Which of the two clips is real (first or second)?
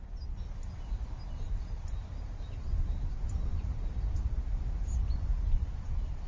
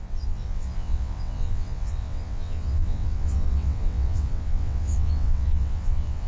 first